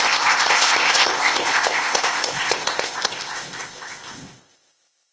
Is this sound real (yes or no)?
no